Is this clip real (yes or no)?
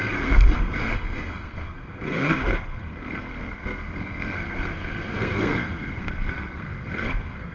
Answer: no